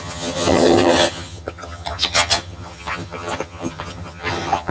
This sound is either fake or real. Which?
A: fake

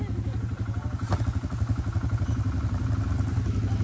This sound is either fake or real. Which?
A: real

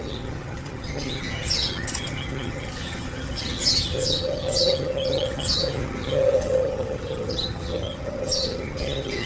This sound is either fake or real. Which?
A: fake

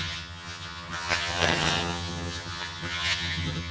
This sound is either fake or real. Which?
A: fake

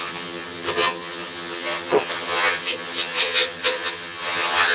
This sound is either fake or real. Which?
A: fake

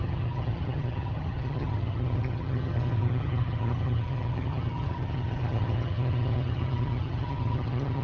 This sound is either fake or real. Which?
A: fake